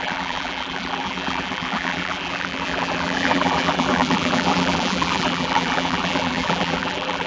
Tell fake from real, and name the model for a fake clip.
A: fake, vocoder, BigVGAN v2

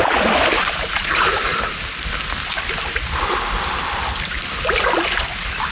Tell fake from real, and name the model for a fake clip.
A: real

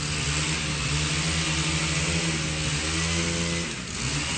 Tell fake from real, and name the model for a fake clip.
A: real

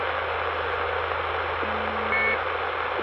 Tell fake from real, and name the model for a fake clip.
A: real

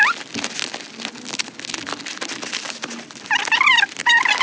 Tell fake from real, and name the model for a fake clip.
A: real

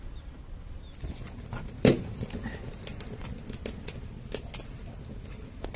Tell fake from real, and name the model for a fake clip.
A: real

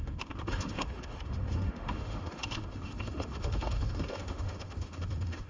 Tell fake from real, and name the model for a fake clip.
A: fake, autoencoder, DAC-VAE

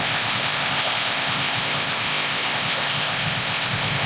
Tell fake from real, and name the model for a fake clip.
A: fake, codec, ZipCodec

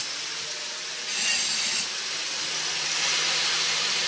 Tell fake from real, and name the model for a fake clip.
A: real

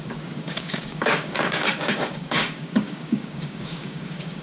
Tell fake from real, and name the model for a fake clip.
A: fake, codec, DAC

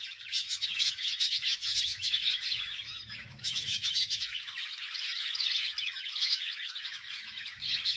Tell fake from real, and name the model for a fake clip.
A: fake, autoencoder, DAC-VAE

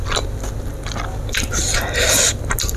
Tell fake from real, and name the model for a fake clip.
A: real